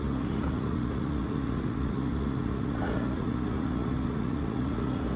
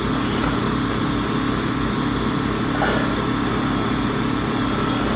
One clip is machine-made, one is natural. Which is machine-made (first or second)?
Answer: first